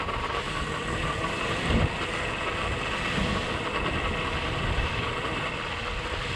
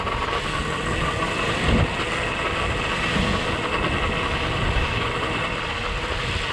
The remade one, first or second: first